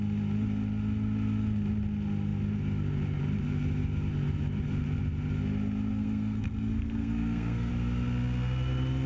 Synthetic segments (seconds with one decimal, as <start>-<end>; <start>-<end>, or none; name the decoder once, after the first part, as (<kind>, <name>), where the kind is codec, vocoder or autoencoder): 5.9-7.7 (codec, SNAC)